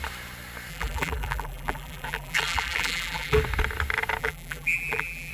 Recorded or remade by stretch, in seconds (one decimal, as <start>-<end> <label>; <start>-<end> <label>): 0.0-0.7 recorded; 0.7-3.4 remade; 3.4-4.2 recorded; 4.2-5.3 remade